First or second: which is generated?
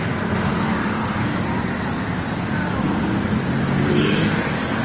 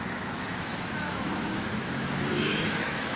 second